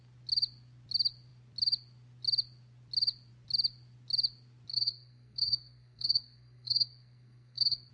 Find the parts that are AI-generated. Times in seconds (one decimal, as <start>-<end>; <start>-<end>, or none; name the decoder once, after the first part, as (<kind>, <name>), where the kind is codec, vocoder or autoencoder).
4.7-7.9 (codec, SNAC)